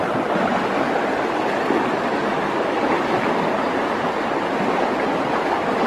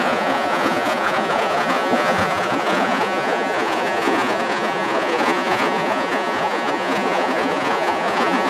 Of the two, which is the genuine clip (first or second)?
first